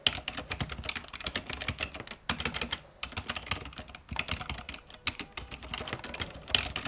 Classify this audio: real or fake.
real